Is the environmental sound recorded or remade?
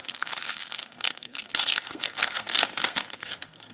remade